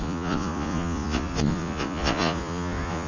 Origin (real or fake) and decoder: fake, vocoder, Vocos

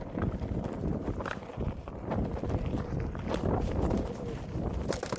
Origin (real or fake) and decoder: real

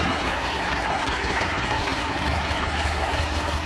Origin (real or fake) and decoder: fake, codec, SNAC